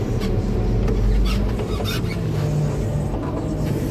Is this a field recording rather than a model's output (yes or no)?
yes